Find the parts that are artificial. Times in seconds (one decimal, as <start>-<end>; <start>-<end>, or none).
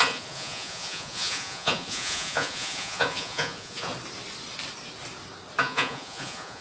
0.0-3.9; 5.6-6.6